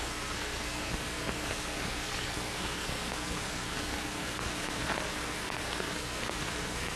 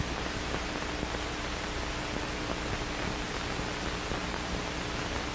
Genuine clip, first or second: second